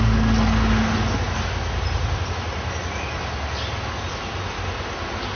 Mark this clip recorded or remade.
recorded